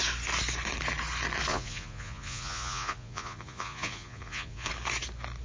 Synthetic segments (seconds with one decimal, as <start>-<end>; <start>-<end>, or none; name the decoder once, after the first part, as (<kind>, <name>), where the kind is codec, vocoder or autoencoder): 1.5-4.7 (vocoder, Vocos)